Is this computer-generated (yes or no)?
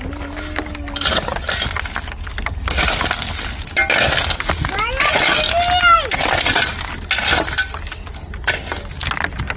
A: no